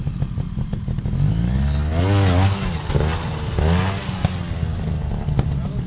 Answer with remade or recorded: recorded